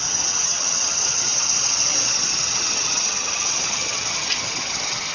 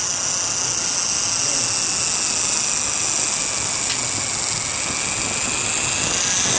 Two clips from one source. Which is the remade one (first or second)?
first